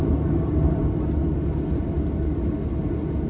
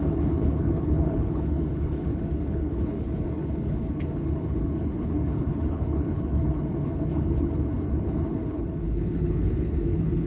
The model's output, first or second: second